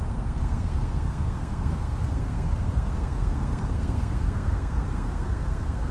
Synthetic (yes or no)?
yes